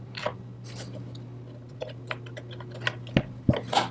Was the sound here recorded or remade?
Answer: recorded